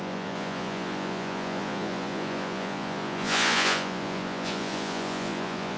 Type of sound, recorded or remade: remade